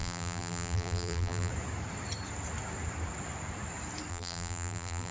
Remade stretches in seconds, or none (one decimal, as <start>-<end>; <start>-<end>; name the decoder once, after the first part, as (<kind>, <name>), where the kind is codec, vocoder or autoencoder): 0.0-1.5 (vocoder, BigVGAN v2); 4.1-5.1